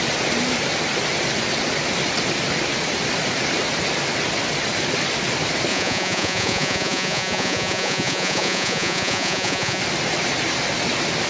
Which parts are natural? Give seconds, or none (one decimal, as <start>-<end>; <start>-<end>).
0.0-5.7; 9.8-11.3